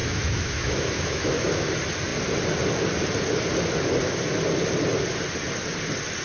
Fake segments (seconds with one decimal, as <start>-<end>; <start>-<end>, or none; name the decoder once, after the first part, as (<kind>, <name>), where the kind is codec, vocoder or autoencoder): 0.0-1.7 (autoencoder, DAC-VAE)